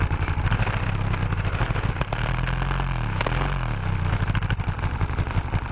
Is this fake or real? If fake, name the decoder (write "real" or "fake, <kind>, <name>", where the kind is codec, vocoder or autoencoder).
real